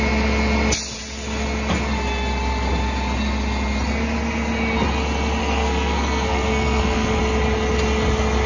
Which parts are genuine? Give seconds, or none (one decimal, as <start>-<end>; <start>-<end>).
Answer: 0.0-5.4; 7.2-8.5